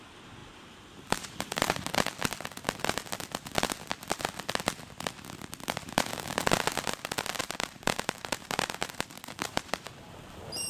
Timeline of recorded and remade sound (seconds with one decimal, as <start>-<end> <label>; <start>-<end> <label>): 0.0-0.4 recorded; 0.4-2.1 remade; 2.1-7.4 recorded; 7.4-9.9 remade; 9.9-10.7 recorded

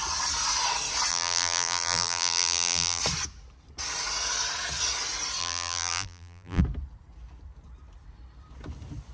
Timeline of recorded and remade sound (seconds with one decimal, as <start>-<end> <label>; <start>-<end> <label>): 0.0-1.1 recorded; 1.1-3.0 remade; 3.0-5.4 recorded; 5.4-6.6 remade; 6.6-9.1 recorded

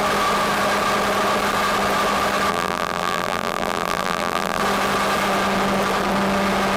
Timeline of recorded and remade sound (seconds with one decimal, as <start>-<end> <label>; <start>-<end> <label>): 0.0-2.5 recorded; 2.5-4.6 remade; 4.6-6.8 recorded

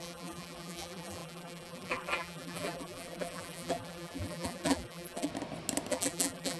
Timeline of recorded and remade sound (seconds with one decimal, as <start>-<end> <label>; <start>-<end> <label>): 0.0-5.3 remade; 5.3-5.9 recorded; 5.9-6.6 remade

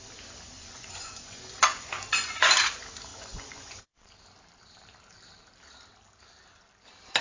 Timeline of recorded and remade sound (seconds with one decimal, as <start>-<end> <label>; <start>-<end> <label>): 0.0-0.6 recorded; 0.6-2.5 remade; 2.5-3.1 recorded; 3.1-3.8 remade; 3.8-7.2 recorded

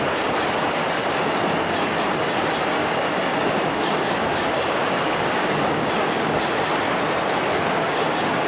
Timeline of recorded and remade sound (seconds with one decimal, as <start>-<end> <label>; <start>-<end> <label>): 0.0-2.8 recorded; 2.8-6.4 remade; 6.4-7.5 recorded; 7.5-8.5 remade

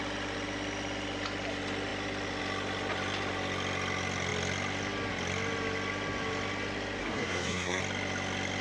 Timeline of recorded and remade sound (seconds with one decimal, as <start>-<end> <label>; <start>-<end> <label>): 0.0-7.0 recorded; 7.0-7.8 remade; 7.8-8.6 recorded